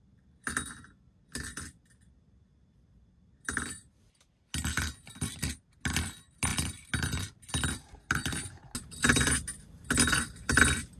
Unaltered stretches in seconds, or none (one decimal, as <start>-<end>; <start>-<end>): 0.0-11.0